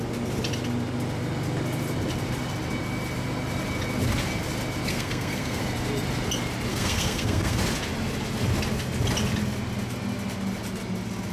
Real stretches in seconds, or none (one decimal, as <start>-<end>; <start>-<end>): 0.0-4.9; 5.6-6.7; 7.6-11.3